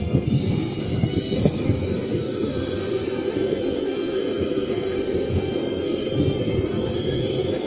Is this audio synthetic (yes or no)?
yes